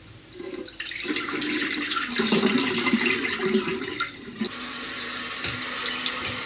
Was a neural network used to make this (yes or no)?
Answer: no